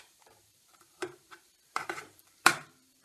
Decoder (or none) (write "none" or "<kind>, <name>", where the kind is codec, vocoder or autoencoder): vocoder, BigVGAN v2